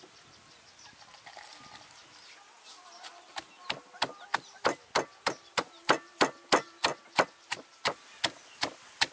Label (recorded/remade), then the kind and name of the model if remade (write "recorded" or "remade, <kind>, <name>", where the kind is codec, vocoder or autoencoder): recorded